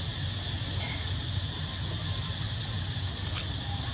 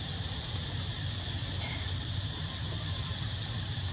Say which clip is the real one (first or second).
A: first